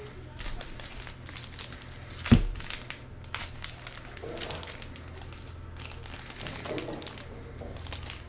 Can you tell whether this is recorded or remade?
recorded